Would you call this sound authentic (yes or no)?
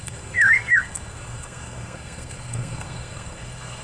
no